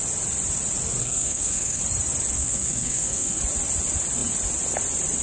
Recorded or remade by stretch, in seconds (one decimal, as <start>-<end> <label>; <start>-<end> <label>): 0.0-1.0 recorded; 1.0-1.8 remade; 1.8-2.4 recorded; 2.4-3.4 remade; 3.4-5.2 recorded